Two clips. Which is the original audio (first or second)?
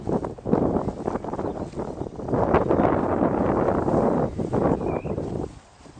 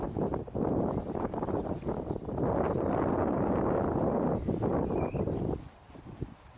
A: first